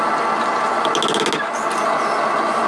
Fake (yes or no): no